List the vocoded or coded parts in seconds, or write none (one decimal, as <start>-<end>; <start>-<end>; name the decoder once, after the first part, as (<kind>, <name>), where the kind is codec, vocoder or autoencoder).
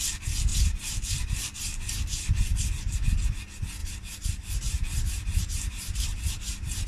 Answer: 0.5-2.7 (vocoder, BigVGAN v2); 3.8-6.9